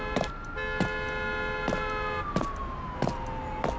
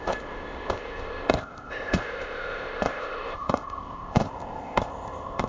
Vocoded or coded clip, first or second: second